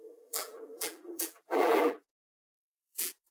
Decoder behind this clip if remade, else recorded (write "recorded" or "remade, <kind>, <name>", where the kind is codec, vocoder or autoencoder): remade, vocoder, BigVGAN v2